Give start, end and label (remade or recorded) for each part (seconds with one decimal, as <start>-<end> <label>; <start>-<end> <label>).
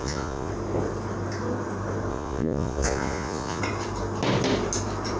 0.0-0.5 remade; 0.5-2.1 recorded; 2.1-3.6 remade; 3.6-5.2 recorded